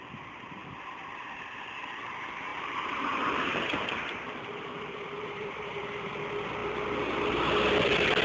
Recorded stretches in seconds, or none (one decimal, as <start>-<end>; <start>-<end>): 0.0-2.5; 6.1-8.2